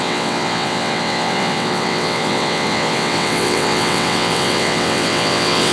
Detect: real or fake fake